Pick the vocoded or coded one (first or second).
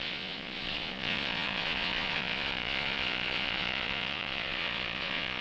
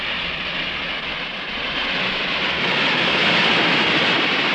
first